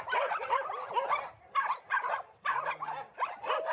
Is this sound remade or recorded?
recorded